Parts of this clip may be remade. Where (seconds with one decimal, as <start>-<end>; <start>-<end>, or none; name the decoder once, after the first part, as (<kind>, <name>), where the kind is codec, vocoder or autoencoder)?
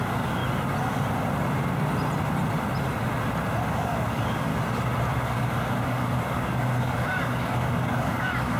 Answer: 0.0-0.4 (codec, DAC); 3.7-4.5; 5.2-8.6